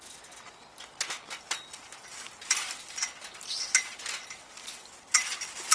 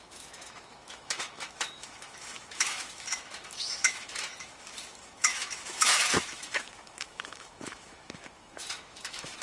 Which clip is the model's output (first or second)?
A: second